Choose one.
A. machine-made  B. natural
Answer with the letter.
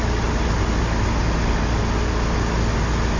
B